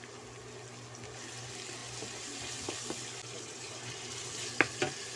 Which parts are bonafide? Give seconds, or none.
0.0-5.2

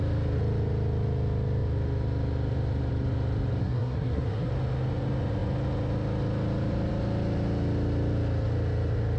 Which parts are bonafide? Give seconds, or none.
0.0-3.6; 4.5-9.2

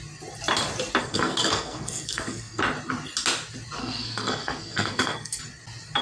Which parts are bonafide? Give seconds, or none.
0.0-1.0; 2.6-3.8; 5.4-6.0

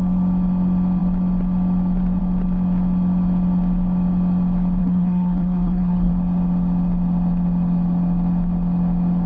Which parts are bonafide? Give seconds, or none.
0.0-4.8; 6.1-9.3